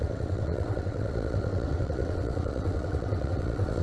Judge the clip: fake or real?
fake